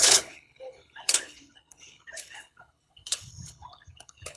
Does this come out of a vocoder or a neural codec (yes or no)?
yes